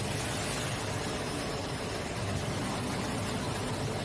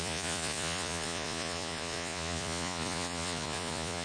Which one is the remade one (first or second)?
second